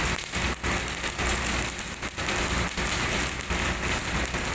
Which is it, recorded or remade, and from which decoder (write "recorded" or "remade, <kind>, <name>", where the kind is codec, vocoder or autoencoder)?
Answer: recorded